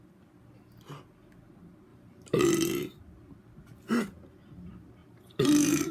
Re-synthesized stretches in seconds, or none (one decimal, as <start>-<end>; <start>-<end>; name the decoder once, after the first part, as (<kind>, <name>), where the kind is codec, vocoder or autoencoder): 1.9-2.5 (vocoder, BigVGAN v2); 5.0-5.9